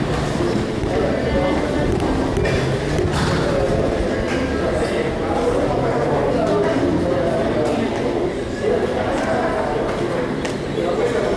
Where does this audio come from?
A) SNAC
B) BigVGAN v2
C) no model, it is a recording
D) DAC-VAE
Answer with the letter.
C